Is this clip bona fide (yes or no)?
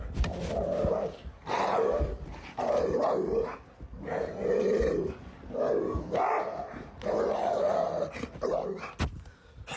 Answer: yes